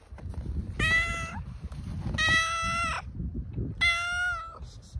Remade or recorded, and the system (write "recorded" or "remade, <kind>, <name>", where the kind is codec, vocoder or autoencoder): recorded